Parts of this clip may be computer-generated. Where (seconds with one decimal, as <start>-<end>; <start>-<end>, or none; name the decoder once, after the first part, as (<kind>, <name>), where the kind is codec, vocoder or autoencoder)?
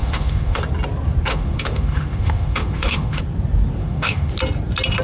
0.0-0.6 (autoencoder, DAC-VAE); 1.3-3.2; 3.8-4.3